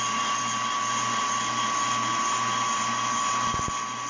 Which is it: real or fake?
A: real